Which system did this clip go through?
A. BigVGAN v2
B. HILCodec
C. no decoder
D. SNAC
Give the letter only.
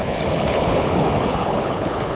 B